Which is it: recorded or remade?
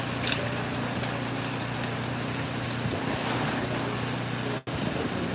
recorded